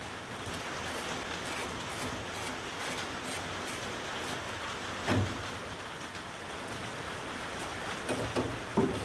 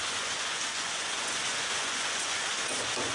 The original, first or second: first